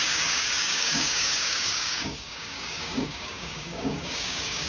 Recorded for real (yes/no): no